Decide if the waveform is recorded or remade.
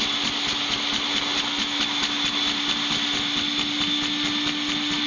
recorded